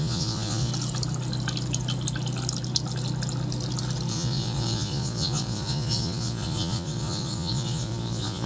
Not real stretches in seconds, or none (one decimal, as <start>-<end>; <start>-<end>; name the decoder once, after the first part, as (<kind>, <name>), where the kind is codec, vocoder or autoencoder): 0.0-0.7 (vocoder, Vocos); 4.1-8.5